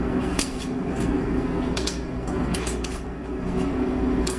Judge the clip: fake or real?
fake